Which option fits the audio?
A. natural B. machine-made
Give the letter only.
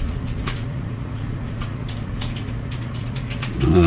B